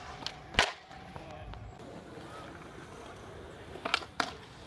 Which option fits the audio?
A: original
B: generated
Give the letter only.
A